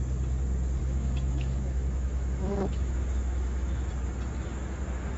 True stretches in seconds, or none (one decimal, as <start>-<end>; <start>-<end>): 0.0-0.8; 3.9-5.2